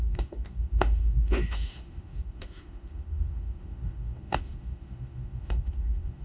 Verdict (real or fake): fake